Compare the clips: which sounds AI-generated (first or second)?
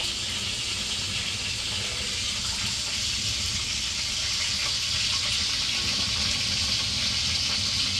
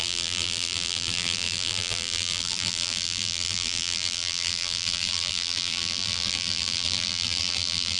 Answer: second